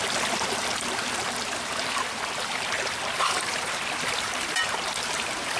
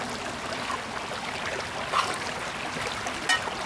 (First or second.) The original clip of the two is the second